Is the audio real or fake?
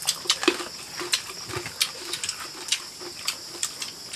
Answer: real